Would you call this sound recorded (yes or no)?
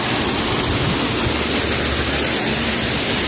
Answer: yes